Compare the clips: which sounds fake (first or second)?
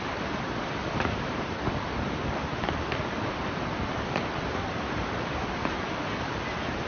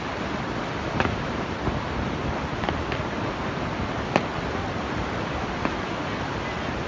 first